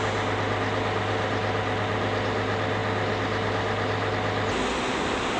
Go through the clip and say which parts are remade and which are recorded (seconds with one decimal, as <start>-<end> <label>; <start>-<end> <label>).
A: 0.0-5.4 recorded